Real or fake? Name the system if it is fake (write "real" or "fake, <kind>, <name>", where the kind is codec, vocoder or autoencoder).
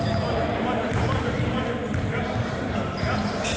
fake, vocoder, BigVGAN v2